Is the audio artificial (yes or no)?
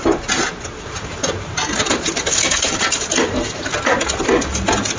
no